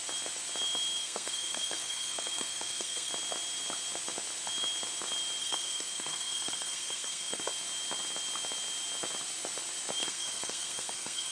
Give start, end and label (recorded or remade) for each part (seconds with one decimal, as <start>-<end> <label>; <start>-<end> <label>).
0.0-1.0 recorded; 1.0-3.1 remade; 3.1-5.4 recorded; 5.4-7.4 remade; 7.4-10.0 recorded; 10.0-11.3 remade